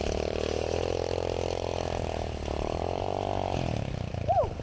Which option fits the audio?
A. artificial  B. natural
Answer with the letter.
B